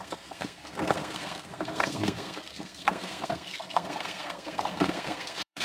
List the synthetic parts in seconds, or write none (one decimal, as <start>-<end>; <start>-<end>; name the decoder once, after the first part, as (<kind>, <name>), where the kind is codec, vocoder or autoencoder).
0.0-5.6 (codec, SNAC)